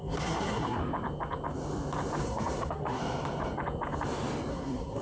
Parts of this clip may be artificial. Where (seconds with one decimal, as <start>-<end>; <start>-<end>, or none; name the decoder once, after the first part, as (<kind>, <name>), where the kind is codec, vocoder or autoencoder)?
0.0-0.8 (codec, SNAC); 2.2-3.0; 4.5-5.0